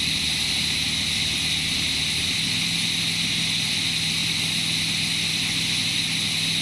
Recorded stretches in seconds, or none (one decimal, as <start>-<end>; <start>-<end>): 0.0-6.6